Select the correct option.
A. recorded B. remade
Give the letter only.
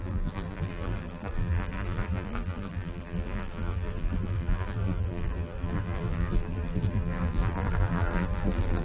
B